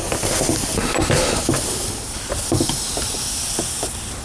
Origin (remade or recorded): recorded